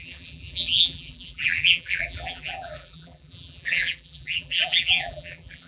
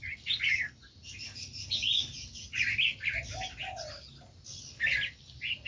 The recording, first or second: second